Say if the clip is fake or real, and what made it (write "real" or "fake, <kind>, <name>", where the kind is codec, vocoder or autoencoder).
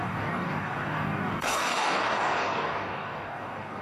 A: fake, codec, DAC